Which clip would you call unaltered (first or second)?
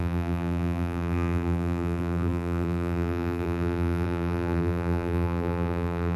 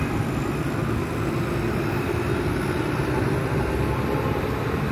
second